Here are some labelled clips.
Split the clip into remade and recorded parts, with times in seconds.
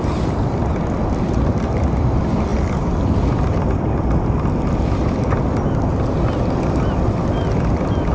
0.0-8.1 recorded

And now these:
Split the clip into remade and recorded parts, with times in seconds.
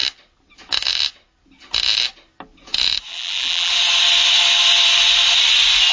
0.0-3.1 recorded; 3.1-3.7 remade; 3.7-5.9 recorded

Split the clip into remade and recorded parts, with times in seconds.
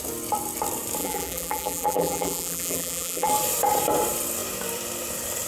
0.0-1.0 recorded; 1.0-3.3 remade; 3.3-5.5 recorded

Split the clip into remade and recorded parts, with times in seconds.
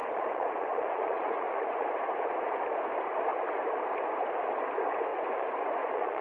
0.0-1.9 remade; 1.9-5.1 recorded; 5.1-6.2 remade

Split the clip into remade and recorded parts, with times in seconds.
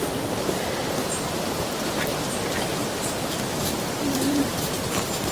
0.0-2.1 remade; 2.1-3.6 recorded; 3.6-5.3 remade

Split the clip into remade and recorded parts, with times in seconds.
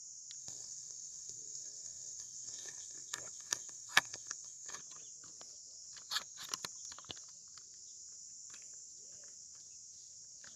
0.0-0.4 recorded; 0.4-4.8 remade; 4.8-10.6 recorded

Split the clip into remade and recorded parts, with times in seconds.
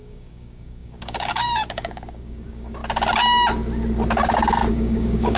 0.0-2.8 remade; 2.8-4.7 recorded; 4.7-5.4 remade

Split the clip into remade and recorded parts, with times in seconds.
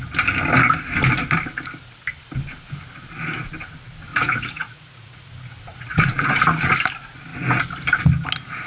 0.0-4.1 recorded; 4.1-5.3 remade; 5.3-5.7 recorded; 5.7-6.4 remade; 6.4-8.7 recorded